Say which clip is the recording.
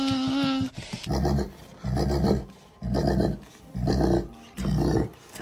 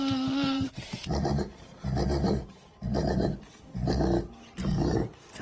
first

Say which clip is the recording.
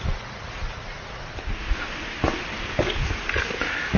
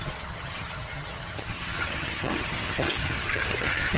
first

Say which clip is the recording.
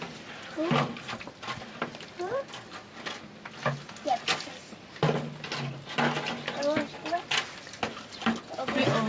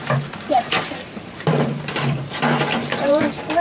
first